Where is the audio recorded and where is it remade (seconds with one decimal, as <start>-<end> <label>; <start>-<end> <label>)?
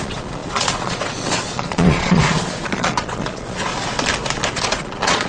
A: 0.0-3.7 remade; 3.7-4.5 recorded; 4.5-5.3 remade